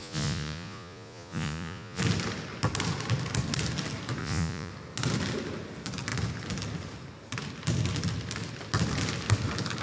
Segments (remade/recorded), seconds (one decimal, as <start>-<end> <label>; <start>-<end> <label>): 0.0-2.0 remade; 2.0-4.2 recorded; 4.2-4.7 remade; 4.7-9.8 recorded